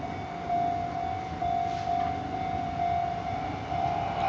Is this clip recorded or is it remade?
recorded